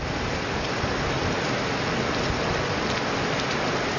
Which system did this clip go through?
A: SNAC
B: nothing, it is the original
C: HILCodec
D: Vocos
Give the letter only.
B